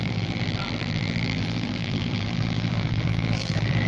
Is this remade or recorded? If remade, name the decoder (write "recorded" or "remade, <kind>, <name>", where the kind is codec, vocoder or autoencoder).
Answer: remade, vocoder, BigVGAN v2